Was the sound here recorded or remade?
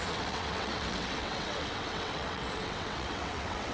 remade